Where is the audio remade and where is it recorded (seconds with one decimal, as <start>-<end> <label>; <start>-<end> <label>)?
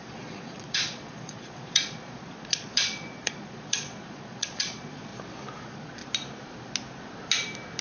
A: 0.0-5.1 remade; 5.1-5.6 recorded; 5.6-6.0 remade; 6.0-7.8 recorded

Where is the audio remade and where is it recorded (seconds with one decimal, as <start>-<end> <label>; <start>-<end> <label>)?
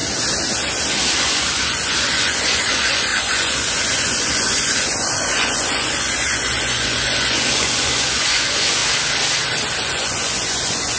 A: 0.0-1.2 recorded; 1.2-8.8 remade; 8.8-9.8 recorded; 9.8-11.0 remade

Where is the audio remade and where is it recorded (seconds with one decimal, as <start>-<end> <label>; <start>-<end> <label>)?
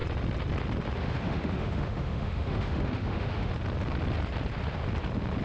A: 0.0-1.0 recorded; 1.0-3.5 remade; 3.5-5.4 recorded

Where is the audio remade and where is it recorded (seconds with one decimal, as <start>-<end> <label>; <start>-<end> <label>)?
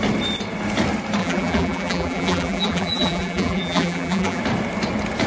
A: 0.0-1.2 recorded; 1.2-4.4 remade; 4.4-5.3 recorded